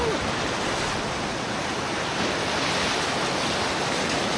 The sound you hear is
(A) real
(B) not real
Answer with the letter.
A